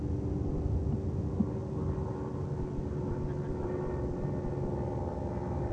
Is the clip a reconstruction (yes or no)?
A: yes